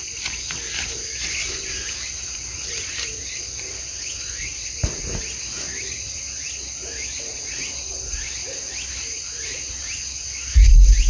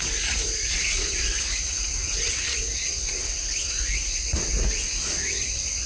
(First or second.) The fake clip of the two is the second